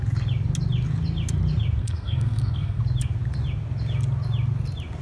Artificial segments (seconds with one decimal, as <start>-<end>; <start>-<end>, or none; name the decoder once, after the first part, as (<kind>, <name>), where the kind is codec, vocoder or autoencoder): 1.8-2.8 (codec, SNAC)